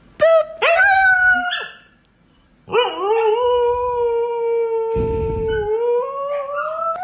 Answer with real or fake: real